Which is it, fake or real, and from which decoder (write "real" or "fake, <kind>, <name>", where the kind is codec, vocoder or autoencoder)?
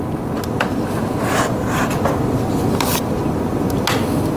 real